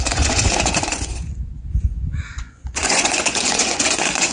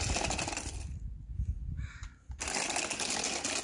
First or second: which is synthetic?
first